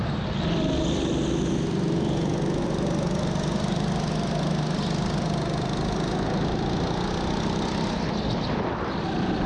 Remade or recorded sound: recorded